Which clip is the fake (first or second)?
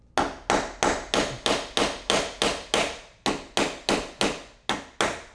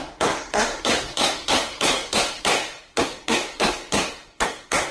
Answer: second